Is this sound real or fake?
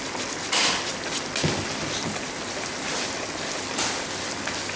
real